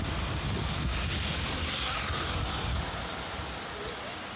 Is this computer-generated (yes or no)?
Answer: no